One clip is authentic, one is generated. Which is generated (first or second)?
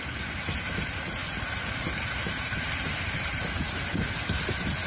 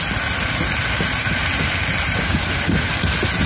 first